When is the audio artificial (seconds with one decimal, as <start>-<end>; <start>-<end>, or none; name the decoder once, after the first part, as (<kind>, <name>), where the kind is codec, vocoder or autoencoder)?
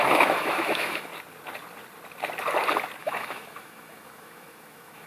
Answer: 0.0-1.1 (autoencoder, DAC-VAE); 3.0-5.1